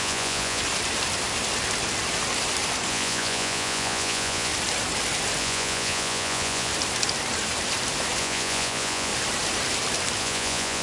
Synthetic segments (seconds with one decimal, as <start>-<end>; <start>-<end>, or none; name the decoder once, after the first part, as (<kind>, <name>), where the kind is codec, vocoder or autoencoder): 0.0-0.6 (vocoder, Vocos); 2.9-4.5; 5.4-6.7; 8.2-9.1; 10.2-10.8